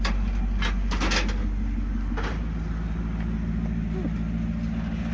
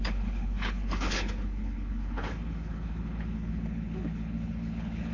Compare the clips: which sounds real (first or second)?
first